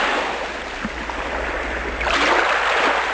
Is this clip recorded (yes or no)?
yes